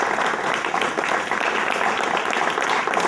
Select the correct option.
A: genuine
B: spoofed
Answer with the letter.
A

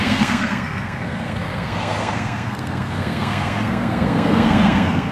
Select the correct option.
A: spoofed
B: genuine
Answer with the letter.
A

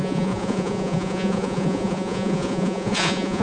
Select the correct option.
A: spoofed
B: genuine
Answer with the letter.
A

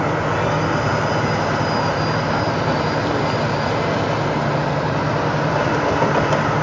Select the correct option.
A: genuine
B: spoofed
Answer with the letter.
A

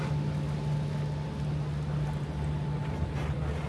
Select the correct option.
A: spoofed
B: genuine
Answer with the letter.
B